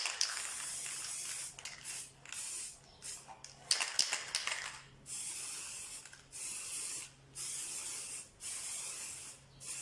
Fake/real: real